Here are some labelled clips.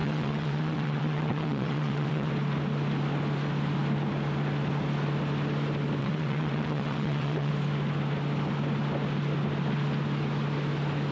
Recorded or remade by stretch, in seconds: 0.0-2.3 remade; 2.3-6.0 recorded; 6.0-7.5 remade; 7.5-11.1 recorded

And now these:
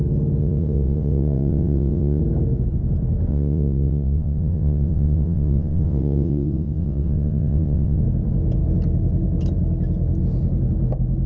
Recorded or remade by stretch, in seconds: 0.0-0.4 recorded; 0.4-2.2 remade; 2.2-3.3 recorded; 3.3-8.0 remade; 8.0-11.3 recorded

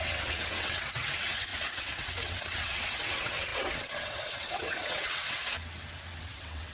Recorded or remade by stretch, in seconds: 0.0-5.4 remade; 5.4-6.2 recorded; 6.2-6.7 remade

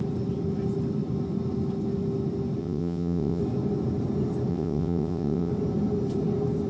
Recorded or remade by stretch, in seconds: 0.0-2.6 recorded; 2.6-3.4 remade; 3.4-4.5 recorded; 4.5-5.5 remade; 5.5-6.7 recorded

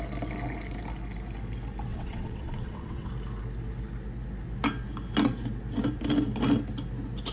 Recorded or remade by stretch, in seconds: 0.0-1.9 recorded; 1.9-3.1 remade; 3.1-7.3 recorded